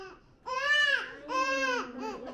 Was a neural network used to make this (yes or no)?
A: yes